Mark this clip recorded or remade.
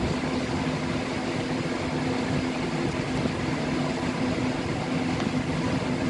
recorded